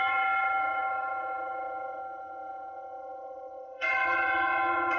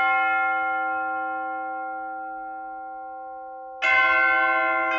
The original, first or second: second